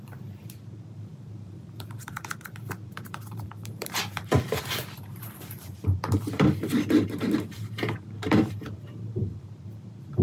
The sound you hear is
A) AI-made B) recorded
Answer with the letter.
A